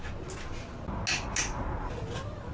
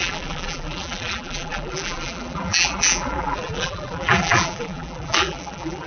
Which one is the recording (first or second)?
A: first